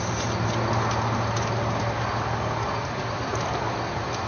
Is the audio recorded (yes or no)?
yes